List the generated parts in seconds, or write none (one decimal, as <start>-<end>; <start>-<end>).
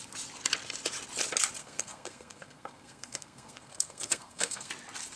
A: 1.6-4.7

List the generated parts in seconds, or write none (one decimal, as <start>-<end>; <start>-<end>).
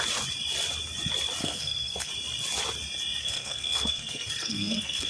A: 1.4-2.1; 3.2-5.1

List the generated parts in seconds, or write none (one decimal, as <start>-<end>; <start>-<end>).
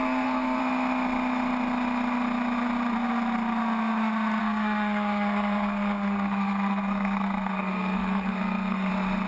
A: 0.0-0.6; 4.4-8.9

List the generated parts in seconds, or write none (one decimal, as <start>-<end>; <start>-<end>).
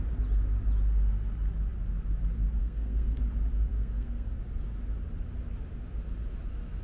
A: 2.6-3.2; 3.7-4.3